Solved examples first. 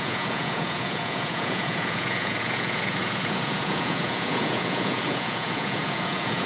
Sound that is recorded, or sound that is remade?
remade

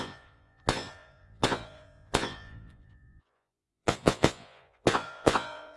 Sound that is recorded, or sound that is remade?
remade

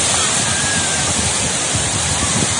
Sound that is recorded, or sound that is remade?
recorded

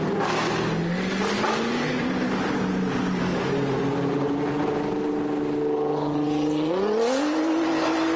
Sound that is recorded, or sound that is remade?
recorded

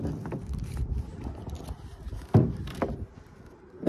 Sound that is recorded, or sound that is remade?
recorded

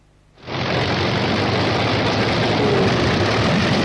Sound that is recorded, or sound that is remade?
recorded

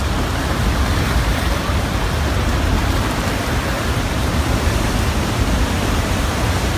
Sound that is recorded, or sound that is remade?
recorded